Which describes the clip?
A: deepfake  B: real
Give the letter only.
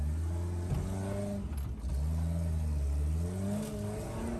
B